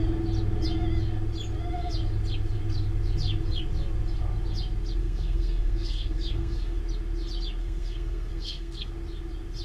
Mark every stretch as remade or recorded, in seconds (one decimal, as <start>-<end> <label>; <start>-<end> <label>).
0.0-5.0 recorded; 5.0-6.8 remade; 6.8-7.6 recorded; 7.6-8.9 remade; 8.9-9.6 recorded